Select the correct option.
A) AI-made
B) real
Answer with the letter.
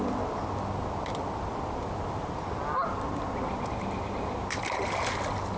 B